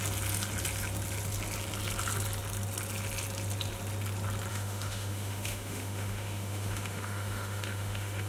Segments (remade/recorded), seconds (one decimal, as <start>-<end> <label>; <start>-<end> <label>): 0.0-4.5 recorded; 4.5-8.3 remade

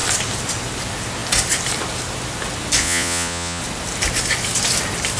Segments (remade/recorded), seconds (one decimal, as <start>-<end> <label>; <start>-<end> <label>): 0.0-2.8 recorded; 2.8-3.6 remade; 3.6-5.2 recorded

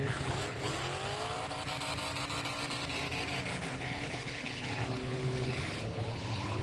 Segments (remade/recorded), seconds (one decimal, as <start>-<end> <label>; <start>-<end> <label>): 0.0-0.8 remade; 0.8-3.5 recorded; 3.5-6.6 remade

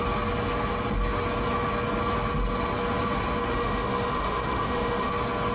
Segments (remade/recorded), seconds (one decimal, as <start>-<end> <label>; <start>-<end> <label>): 0.0-3.5 recorded; 3.5-5.1 remade; 5.1-5.5 recorded

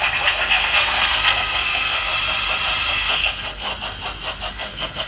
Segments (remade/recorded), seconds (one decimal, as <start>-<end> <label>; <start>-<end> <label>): 0.0-2.1 remade; 2.1-2.9 recorded; 2.9-3.7 remade; 3.7-4.5 recorded; 4.5-5.1 remade